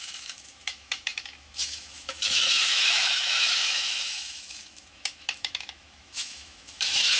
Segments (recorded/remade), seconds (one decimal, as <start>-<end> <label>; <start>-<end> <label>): 0.0-7.2 remade